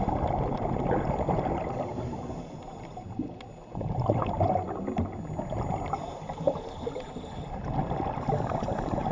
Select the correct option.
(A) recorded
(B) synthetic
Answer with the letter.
A